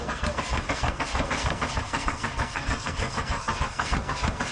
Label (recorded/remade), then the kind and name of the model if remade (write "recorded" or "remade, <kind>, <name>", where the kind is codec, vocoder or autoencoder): remade, codec, SNAC